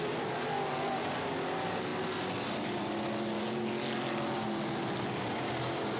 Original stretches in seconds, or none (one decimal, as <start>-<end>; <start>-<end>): 0.0-6.0